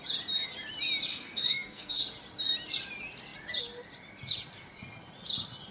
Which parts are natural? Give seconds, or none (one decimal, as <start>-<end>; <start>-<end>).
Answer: 0.0-1.1; 2.0-5.7